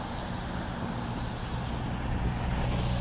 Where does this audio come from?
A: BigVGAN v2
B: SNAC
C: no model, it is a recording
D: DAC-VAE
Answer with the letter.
C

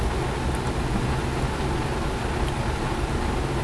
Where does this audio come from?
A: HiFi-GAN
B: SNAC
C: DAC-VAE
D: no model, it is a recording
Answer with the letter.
D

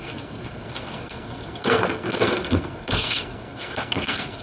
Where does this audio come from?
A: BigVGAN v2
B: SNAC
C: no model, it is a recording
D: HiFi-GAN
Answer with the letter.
B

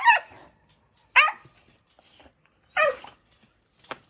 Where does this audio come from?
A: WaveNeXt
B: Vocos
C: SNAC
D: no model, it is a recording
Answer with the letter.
D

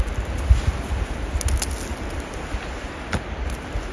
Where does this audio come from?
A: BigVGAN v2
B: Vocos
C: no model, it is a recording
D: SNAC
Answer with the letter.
C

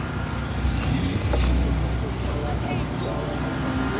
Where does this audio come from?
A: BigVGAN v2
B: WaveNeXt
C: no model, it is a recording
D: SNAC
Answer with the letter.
C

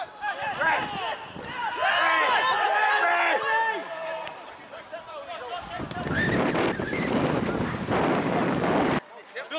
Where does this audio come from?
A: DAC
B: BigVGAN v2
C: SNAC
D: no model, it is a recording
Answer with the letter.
D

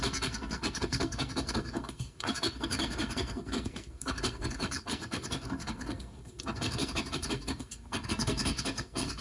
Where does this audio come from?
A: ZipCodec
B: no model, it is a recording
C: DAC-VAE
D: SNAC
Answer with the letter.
D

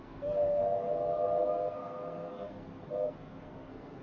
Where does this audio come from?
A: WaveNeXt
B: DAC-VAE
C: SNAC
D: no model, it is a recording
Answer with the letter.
C